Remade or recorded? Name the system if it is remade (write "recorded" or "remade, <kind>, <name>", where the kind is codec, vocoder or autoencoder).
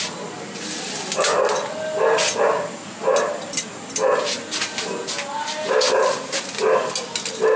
recorded